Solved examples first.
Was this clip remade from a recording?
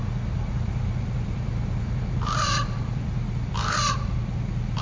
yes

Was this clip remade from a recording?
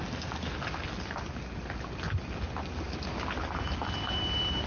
no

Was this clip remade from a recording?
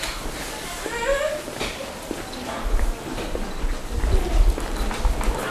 no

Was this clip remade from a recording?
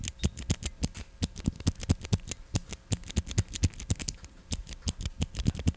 no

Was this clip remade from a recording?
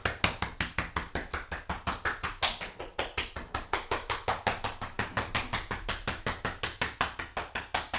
no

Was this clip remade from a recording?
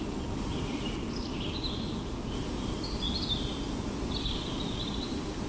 yes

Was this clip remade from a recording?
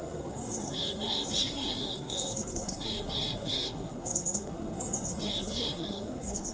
yes